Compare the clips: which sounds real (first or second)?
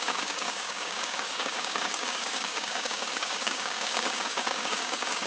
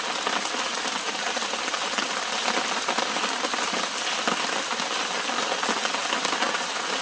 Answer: second